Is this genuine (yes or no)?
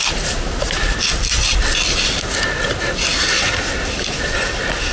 yes